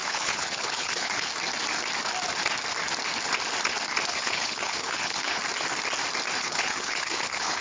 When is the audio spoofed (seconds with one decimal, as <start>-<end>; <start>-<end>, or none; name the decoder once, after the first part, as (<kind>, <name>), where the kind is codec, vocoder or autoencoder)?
0.0-1.3 (codec, HILCodec); 4.1-5.4; 6.4-7.6